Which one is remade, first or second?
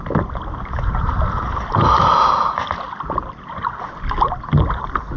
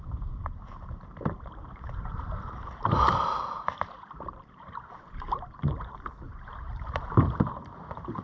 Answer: second